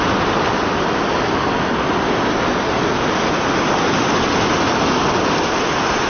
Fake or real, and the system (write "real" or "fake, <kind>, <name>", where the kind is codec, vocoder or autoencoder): real